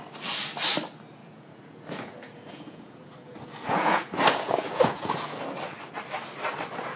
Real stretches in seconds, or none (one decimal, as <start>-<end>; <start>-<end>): 0.0-1.2; 5.4-7.0